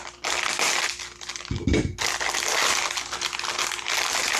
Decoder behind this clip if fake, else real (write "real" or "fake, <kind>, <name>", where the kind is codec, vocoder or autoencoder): real